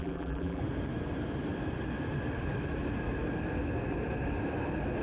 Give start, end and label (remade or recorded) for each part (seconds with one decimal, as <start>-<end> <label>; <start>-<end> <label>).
0.0-0.6 remade; 0.6-5.0 recorded